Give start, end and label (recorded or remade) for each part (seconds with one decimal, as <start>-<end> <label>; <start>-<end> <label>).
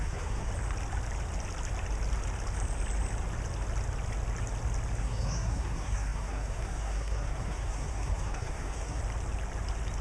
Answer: 0.0-0.5 remade; 0.5-5.0 recorded; 5.0-9.0 remade; 9.0-10.0 recorded